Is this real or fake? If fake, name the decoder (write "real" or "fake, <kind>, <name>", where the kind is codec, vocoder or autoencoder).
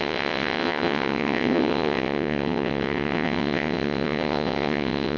fake, vocoder, WaveNeXt